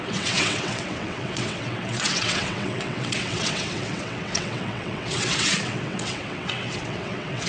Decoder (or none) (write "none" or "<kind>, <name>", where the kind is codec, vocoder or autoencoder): vocoder, WaveNeXt